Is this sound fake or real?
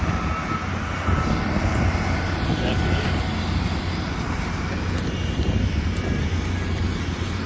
real